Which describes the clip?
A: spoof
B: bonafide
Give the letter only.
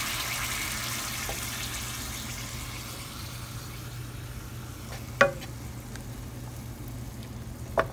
B